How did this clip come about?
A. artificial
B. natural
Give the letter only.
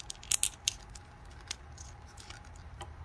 B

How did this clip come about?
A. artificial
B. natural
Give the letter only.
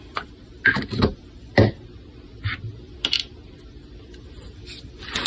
B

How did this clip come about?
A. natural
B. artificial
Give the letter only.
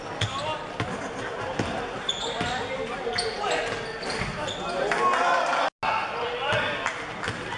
A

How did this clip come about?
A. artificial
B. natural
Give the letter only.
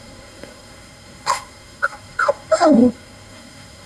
A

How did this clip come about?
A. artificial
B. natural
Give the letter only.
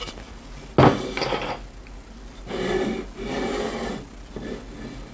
B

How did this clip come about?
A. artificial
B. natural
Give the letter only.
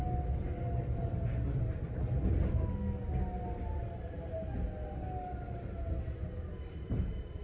B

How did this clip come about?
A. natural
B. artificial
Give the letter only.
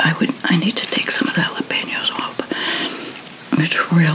A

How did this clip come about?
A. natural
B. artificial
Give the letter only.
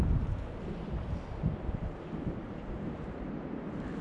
A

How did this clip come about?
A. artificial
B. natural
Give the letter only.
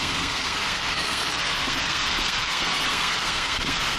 A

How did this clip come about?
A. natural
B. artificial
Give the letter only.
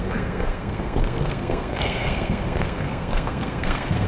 B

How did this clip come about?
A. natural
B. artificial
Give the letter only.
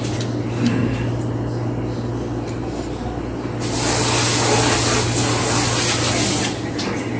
A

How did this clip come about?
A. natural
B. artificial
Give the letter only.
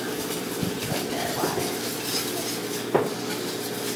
A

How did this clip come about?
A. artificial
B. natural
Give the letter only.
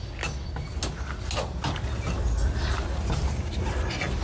B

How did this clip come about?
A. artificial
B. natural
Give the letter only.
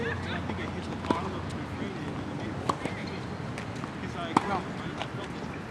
B